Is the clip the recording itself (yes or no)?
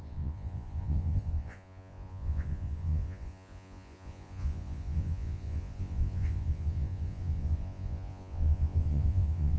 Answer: no